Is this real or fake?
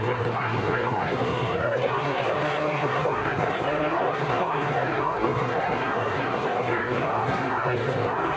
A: fake